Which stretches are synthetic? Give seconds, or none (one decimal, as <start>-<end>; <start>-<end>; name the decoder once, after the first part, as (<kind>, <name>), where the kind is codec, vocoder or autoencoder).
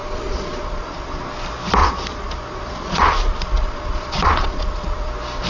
0.0-1.2 (vocoder, Vocos); 1.8-5.1